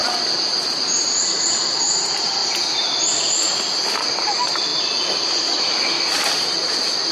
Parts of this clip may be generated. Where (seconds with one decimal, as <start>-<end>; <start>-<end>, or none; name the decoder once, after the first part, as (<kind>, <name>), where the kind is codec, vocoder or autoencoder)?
none